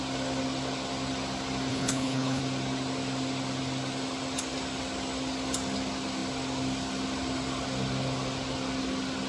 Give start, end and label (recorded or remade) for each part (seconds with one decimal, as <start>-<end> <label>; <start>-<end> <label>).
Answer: 0.0-1.7 recorded; 1.7-2.4 remade; 2.4-9.3 recorded